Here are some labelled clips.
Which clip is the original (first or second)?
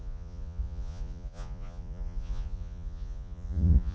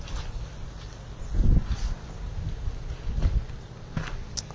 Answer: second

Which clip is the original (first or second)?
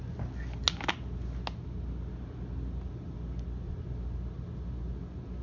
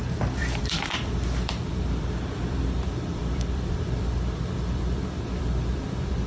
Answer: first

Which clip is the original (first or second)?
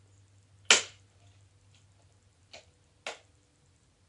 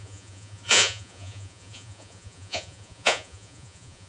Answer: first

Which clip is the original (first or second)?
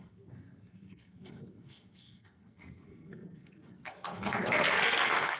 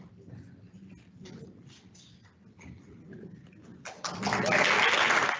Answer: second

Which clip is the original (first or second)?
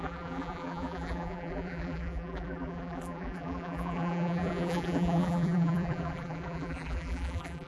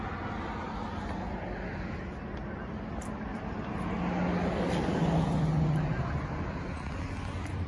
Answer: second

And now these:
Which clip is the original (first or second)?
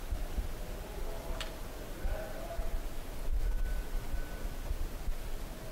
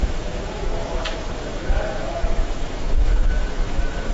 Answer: first